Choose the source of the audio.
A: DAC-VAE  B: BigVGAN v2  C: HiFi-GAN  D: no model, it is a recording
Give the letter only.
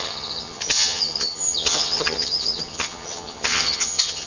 C